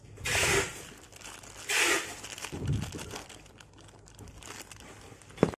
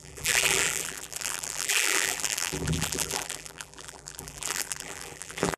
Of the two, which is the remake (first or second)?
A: second